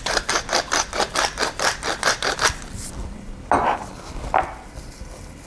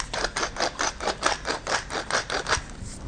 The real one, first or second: second